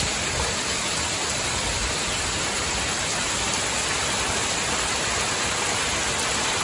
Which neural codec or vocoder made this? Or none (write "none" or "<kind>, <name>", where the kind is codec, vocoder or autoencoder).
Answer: none